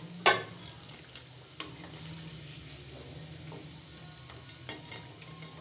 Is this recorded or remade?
recorded